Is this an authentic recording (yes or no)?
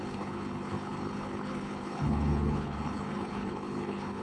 no